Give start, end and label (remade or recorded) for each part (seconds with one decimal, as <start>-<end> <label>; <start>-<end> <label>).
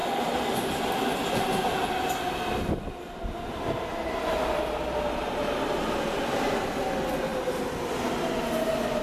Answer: 0.0-9.0 recorded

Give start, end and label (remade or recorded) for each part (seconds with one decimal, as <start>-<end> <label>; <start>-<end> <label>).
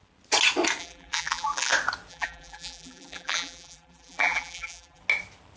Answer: 0.0-0.8 recorded; 0.8-1.7 remade; 1.7-2.1 recorded; 2.1-5.0 remade; 5.0-5.6 recorded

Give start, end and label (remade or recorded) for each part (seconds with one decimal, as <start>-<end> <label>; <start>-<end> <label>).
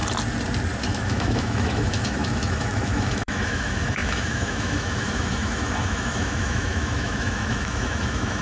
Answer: 0.0-0.9 recorded; 0.9-8.4 remade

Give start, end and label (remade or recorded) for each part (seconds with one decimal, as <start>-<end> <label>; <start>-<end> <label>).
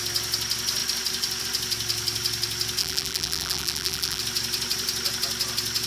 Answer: 0.0-2.8 recorded; 2.8-4.2 remade; 4.2-5.9 recorded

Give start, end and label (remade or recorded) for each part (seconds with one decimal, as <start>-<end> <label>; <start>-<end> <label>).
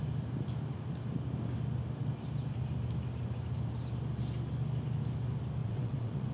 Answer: 0.0-5.6 recorded; 5.6-6.3 remade